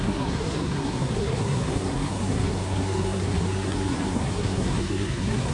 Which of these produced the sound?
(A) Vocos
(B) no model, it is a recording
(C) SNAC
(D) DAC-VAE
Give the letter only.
C